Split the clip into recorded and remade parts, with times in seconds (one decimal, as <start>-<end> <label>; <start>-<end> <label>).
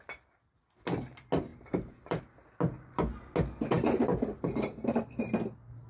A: 0.0-1.5 recorded; 1.5-2.2 remade; 2.2-4.1 recorded; 4.1-5.0 remade; 5.0-5.9 recorded